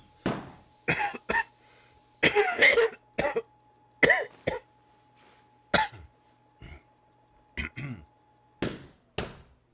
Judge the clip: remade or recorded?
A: recorded